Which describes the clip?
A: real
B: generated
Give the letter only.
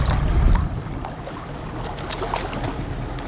A